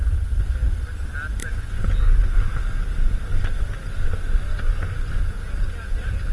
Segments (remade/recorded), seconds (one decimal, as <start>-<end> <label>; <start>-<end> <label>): 0.0-1.4 recorded; 1.4-1.9 remade; 1.9-6.3 recorded